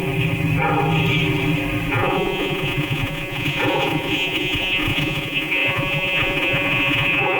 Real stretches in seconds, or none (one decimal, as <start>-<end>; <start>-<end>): 0.0-1.9